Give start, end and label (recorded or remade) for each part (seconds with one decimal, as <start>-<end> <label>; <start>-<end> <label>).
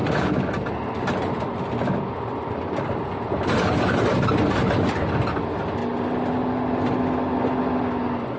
0.0-8.4 recorded